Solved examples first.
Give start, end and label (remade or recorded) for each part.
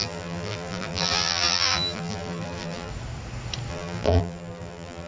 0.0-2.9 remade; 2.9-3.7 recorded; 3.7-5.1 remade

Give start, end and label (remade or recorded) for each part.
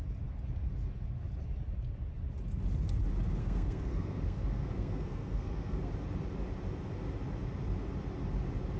0.0-3.4 recorded; 3.4-5.9 remade; 5.9-8.8 recorded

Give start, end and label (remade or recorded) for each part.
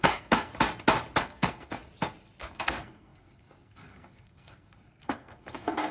0.0-0.5 remade; 0.5-1.2 recorded; 1.2-1.8 remade; 1.8-2.4 recorded; 2.4-5.9 remade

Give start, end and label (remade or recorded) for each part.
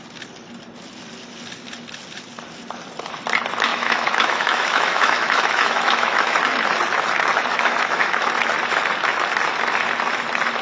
0.0-3.7 recorded; 3.7-6.4 remade; 6.4-7.5 recorded; 7.5-8.3 remade; 8.3-10.6 recorded